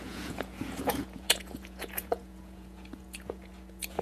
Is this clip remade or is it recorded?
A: remade